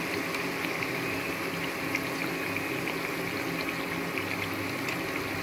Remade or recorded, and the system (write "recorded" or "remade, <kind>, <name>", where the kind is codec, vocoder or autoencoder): recorded